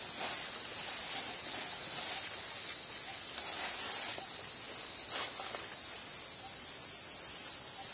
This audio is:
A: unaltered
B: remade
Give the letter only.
A